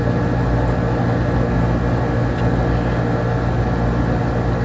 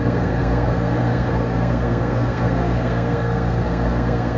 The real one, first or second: first